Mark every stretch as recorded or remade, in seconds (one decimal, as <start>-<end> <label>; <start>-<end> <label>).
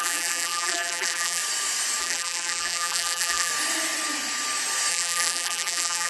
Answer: 0.0-1.4 remade; 1.4-2.0 recorded; 2.0-3.5 remade; 3.5-4.9 recorded; 4.9-6.1 remade